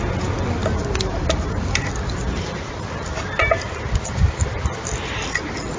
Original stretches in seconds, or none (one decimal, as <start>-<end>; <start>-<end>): 0.0-5.8